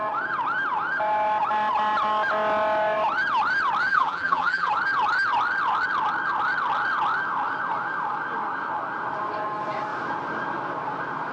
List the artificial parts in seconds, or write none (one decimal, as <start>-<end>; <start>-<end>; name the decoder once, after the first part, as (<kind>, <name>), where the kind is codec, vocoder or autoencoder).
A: 3.9-4.7 (vocoder, BigVGAN v2)